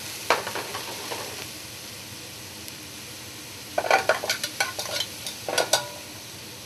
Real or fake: real